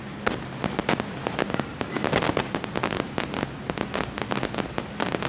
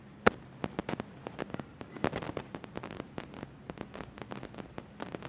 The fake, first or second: second